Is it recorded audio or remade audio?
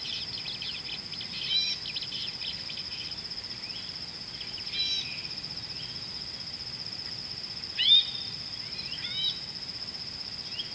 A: recorded